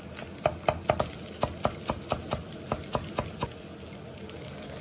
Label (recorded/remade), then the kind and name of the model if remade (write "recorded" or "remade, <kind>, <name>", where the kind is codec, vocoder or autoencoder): recorded